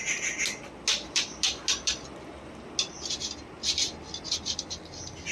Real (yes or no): yes